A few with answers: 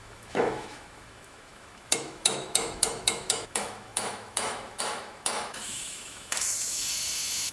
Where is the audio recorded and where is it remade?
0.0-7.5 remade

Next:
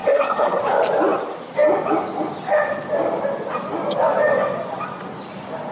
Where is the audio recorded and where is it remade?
0.0-0.6 remade; 0.6-5.7 recorded

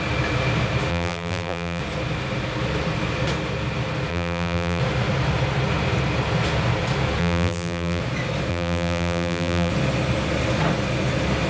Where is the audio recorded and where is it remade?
0.0-0.9 recorded; 0.9-1.8 remade; 1.8-4.1 recorded; 4.1-4.8 remade; 4.8-7.2 recorded; 7.2-8.0 remade; 8.0-8.5 recorded; 8.5-9.7 remade; 9.7-11.5 recorded

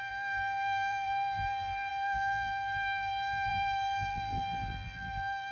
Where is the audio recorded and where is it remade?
0.0-5.5 remade